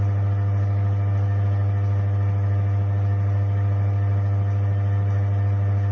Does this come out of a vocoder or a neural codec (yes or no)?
no